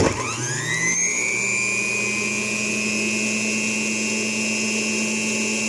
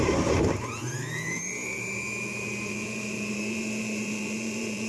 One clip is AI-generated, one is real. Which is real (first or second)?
first